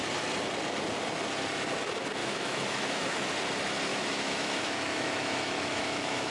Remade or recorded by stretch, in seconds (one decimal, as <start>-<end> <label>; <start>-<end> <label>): 0.0-2.2 recorded; 2.2-3.3 remade; 3.3-3.9 recorded; 3.9-6.3 remade